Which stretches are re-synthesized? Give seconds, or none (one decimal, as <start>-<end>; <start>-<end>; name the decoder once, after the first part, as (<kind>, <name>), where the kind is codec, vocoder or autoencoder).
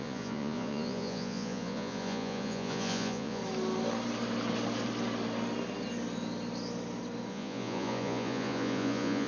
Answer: 0.0-3.4 (vocoder, Vocos); 7.3-9.3